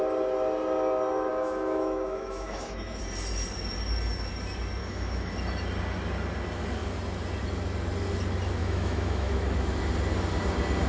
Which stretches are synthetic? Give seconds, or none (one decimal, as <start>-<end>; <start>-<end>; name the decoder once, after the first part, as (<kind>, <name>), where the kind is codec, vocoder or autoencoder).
1.3-3.0 (autoencoder, DAC-VAE); 4.8-5.3; 8.6-9.8